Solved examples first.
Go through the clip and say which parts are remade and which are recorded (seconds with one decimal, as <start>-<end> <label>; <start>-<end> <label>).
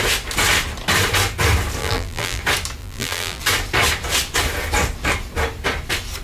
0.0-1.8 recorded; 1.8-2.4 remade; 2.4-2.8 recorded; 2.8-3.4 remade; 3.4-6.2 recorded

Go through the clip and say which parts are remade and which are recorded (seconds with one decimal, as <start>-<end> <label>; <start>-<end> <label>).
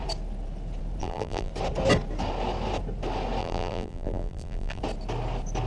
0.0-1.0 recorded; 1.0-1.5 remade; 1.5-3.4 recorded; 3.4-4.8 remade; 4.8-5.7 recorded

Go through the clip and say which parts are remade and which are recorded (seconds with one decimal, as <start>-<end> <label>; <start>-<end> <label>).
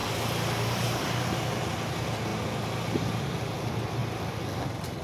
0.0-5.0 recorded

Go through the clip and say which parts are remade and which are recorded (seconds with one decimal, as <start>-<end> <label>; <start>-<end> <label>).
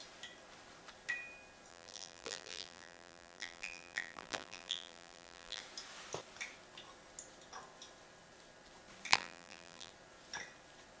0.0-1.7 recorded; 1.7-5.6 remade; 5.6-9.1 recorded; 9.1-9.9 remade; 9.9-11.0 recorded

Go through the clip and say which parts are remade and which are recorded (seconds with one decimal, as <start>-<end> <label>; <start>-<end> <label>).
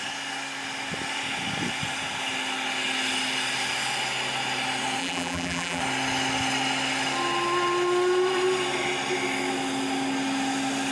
0.0-5.0 recorded; 5.0-5.8 remade; 5.8-10.9 recorded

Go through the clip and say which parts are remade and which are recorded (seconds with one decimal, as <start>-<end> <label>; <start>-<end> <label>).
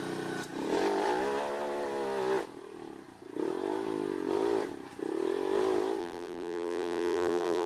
0.0-6.0 recorded; 6.0-7.7 remade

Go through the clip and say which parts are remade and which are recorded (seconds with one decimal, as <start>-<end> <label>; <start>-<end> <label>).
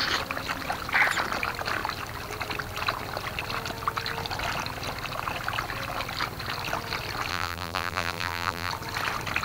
0.0-7.3 recorded; 7.3-8.7 remade; 8.7-9.4 recorded